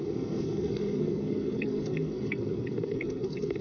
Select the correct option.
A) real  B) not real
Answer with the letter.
B